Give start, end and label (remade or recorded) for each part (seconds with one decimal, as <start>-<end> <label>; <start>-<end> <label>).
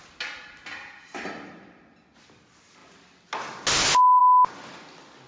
0.0-5.3 recorded